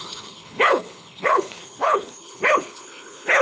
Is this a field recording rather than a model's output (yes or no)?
no